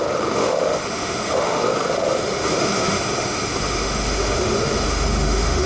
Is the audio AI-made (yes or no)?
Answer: yes